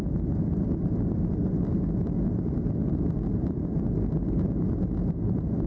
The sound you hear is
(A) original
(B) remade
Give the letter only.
A